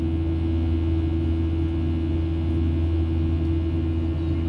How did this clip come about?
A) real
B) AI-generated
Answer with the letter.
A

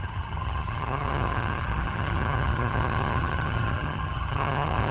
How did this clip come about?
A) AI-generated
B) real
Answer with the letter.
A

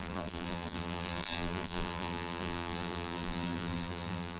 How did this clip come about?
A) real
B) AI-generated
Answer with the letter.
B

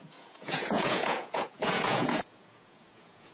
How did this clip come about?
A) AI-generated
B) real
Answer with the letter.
A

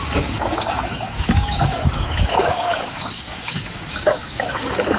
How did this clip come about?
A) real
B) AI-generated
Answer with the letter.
B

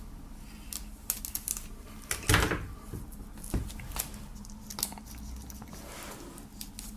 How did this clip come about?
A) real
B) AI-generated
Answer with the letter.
A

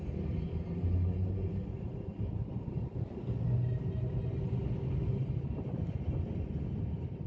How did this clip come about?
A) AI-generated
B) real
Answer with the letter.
B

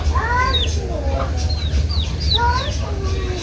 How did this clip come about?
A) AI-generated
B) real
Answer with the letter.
B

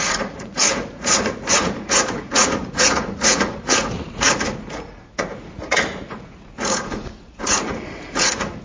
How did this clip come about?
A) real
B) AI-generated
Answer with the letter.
B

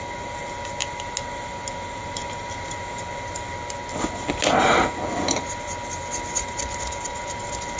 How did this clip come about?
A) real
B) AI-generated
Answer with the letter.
A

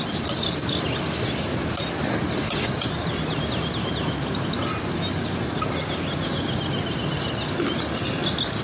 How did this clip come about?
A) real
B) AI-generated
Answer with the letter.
A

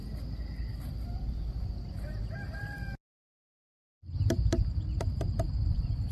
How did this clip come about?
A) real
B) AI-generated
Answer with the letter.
A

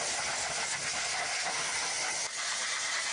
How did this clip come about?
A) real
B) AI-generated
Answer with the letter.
A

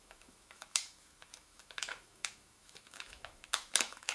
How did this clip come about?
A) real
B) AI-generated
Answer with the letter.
B